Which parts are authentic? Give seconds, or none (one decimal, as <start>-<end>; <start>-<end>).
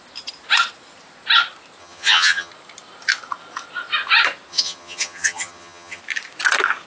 0.0-1.8; 2.5-4.5; 6.0-6.9